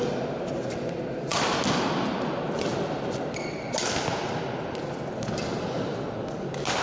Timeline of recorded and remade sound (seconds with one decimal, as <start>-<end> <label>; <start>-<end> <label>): 0.0-6.8 recorded